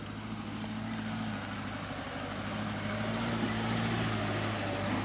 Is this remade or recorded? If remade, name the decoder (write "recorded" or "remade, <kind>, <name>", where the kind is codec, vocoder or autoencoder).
recorded